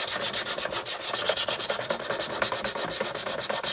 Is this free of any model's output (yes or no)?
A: yes